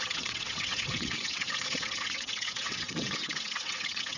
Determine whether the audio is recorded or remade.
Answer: remade